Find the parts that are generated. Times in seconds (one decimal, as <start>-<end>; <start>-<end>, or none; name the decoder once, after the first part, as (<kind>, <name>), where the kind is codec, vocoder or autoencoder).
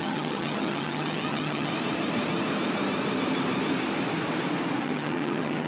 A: 0.0-1.7 (vocoder, HiFi-GAN); 4.8-5.7